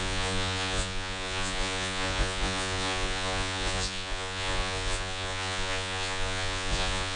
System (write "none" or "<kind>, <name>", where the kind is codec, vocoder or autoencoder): vocoder, Vocos